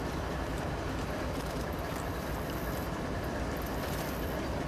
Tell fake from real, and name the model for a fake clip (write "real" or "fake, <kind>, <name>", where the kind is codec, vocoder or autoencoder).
fake, vocoder, BigVGAN v2